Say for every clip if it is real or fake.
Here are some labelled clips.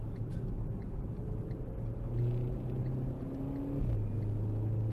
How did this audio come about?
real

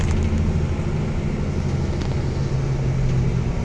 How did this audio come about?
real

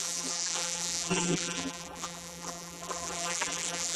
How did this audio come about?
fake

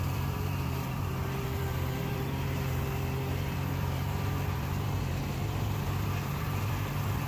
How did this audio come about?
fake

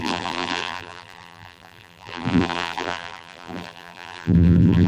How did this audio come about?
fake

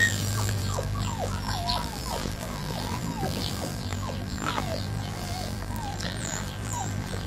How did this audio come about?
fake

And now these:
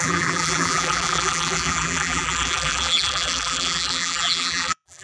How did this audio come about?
fake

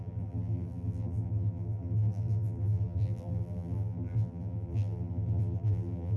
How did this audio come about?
fake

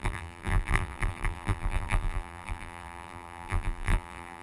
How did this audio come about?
fake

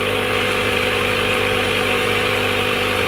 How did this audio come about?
fake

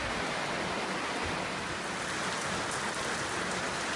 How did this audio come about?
real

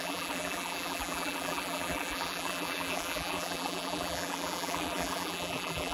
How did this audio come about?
fake